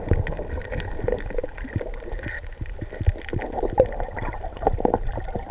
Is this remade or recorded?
recorded